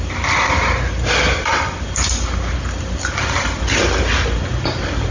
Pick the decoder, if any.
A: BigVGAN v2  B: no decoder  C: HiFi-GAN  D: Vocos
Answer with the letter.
B